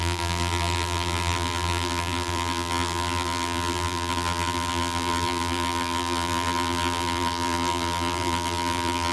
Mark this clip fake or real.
fake